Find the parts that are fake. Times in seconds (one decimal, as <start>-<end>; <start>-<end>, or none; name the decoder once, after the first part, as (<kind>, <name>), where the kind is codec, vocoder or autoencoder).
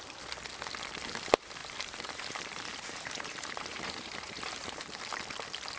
1.6-5.0 (vocoder, BigVGAN v2)